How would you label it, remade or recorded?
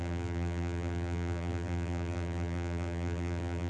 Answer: remade